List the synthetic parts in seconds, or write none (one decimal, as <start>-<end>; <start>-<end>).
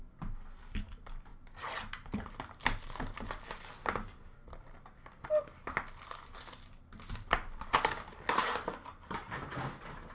none